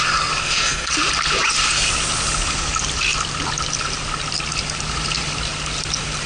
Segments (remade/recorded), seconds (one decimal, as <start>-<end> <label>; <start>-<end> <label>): 0.0-0.4 recorded; 0.4-0.9 remade; 0.9-6.3 recorded